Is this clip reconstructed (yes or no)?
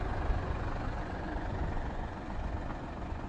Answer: yes